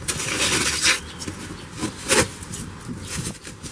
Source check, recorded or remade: recorded